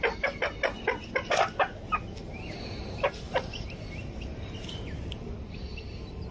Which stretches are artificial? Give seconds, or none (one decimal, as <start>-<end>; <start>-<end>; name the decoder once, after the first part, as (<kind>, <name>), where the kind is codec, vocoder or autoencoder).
2.2-6.3 (vocoder, BigVGAN v2)